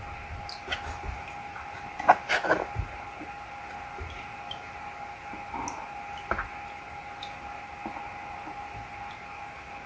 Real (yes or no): yes